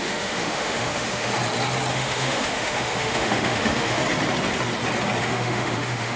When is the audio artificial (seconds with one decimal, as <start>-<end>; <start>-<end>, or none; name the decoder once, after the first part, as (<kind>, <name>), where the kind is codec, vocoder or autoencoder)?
0.0-1.3 (autoencoder, DAC-VAE); 1.9-4.0; 5.2-6.2